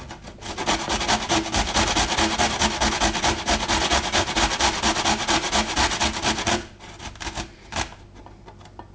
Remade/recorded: recorded